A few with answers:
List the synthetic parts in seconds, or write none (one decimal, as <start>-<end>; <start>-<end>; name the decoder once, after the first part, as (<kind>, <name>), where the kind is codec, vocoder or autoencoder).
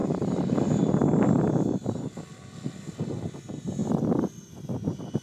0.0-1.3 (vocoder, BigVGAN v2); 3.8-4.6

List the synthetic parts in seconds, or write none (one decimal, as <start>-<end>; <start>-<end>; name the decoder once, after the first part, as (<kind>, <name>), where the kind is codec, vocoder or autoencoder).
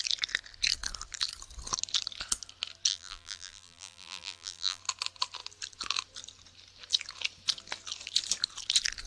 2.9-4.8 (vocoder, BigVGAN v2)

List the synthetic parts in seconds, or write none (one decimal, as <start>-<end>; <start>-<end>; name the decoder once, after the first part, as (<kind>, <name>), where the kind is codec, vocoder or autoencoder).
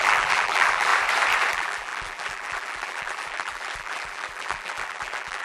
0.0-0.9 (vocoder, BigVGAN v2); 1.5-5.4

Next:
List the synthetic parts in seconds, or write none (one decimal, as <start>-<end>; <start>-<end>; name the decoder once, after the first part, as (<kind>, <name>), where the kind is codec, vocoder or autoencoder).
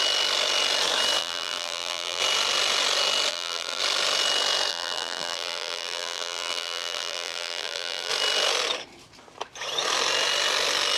1.2-2.2 (vocoder, BigVGAN v2); 3.3-3.8; 4.7-8.1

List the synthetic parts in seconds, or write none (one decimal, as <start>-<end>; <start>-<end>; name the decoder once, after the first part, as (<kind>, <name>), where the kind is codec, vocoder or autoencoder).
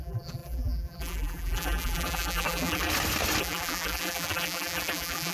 0.0-2.9 (vocoder, BigVGAN v2); 3.4-5.3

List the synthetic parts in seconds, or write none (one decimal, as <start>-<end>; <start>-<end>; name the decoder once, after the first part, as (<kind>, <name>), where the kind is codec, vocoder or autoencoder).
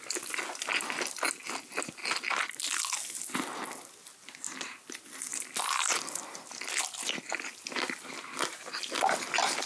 5.3-7.1 (vocoder, BigVGAN v2)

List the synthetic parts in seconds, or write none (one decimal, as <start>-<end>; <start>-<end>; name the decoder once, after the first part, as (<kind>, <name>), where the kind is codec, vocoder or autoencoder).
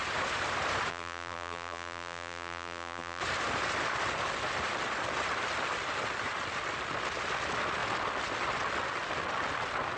0.9-3.2 (vocoder, BigVGAN v2)